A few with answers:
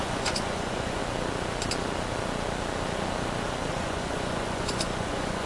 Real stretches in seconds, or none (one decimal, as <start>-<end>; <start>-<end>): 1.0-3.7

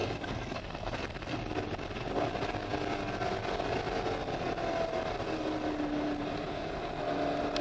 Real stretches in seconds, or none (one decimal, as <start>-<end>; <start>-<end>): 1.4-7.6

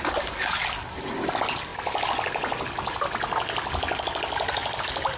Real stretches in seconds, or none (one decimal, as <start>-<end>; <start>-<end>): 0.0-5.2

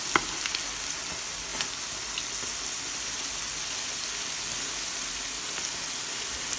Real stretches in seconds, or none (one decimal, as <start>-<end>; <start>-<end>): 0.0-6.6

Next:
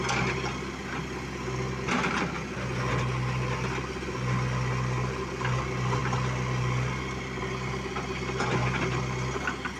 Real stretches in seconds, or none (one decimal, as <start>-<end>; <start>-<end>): 0.0-9.8